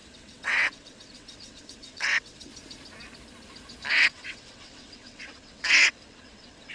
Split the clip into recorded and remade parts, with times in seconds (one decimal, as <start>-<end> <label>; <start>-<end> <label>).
0.0-2.5 remade; 2.5-3.9 recorded; 3.9-6.7 remade